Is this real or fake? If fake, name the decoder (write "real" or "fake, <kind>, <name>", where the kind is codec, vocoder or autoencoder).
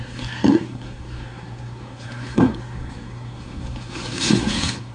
fake, codec, SNAC